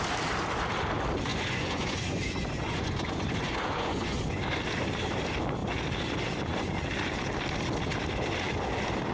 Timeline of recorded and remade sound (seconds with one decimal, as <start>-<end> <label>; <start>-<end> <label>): 0.0-1.3 recorded; 1.3-4.4 remade; 4.4-9.1 recorded